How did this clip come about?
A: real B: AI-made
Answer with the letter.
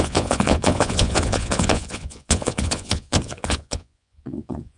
B